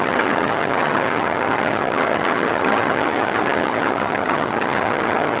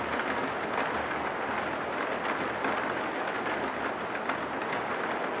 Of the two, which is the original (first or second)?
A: second